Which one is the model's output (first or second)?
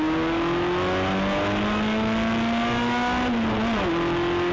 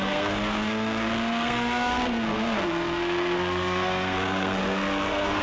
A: second